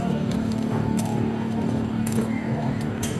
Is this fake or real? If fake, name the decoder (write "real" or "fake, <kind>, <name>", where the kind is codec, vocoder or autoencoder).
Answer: fake, codec, DAC